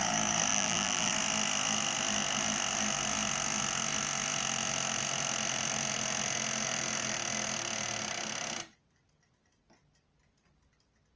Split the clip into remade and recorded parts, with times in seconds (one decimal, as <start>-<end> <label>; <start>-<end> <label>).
0.0-0.5 recorded; 0.5-1.1 remade; 1.1-11.2 recorded